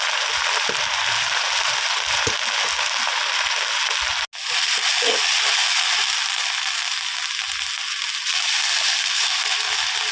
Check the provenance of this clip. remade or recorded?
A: recorded